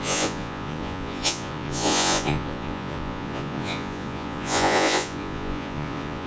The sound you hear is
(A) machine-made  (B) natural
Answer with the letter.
A